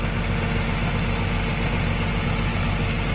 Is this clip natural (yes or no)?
yes